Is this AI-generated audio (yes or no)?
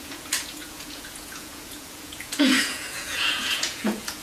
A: yes